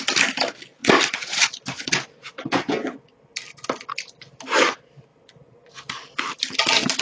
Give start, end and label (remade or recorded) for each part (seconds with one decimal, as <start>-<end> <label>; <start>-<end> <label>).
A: 0.0-7.0 recorded